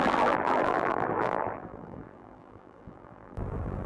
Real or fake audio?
fake